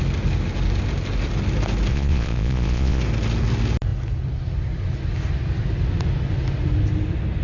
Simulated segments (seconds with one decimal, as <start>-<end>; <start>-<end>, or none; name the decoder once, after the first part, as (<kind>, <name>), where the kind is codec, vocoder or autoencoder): 1.9-3.0 (vocoder, Vocos)